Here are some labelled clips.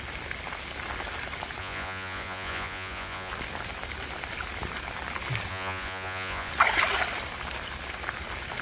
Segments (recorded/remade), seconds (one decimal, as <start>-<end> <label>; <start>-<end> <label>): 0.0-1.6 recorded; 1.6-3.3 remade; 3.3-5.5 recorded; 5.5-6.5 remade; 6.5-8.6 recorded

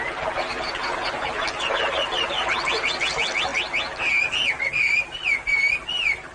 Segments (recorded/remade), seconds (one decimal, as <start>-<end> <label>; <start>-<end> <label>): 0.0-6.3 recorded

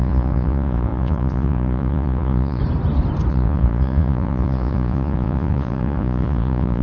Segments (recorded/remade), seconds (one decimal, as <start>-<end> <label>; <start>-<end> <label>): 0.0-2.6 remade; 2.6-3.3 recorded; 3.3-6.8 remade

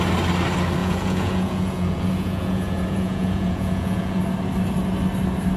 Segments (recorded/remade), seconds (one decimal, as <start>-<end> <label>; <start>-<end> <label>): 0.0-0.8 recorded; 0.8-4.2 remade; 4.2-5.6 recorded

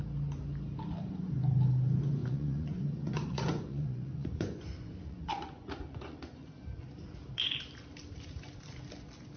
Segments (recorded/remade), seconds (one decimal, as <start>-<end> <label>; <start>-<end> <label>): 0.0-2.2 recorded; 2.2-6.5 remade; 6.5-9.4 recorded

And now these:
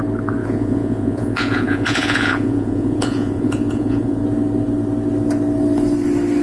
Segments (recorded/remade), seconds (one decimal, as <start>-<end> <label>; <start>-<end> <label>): 0.0-0.4 recorded; 0.4-4.2 remade; 4.2-6.4 recorded

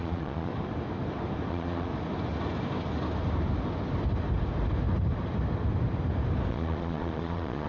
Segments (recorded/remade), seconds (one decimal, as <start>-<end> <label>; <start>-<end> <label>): 0.0-0.5 remade; 0.5-1.5 recorded; 1.5-1.9 remade; 1.9-6.5 recorded; 6.5-7.7 remade